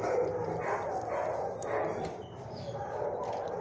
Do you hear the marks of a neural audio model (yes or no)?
no